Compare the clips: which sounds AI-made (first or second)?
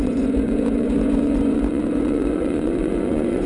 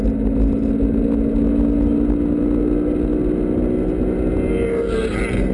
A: first